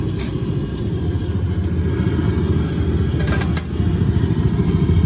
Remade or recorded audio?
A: recorded